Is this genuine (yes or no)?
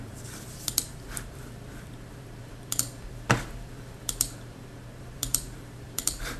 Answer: no